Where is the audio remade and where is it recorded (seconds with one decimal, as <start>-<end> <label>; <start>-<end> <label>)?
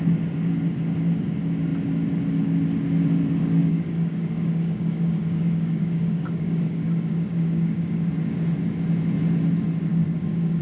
0.0-3.4 recorded; 3.4-8.1 remade; 8.1-9.9 recorded; 9.9-10.6 remade